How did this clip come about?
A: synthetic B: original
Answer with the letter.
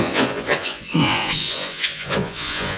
A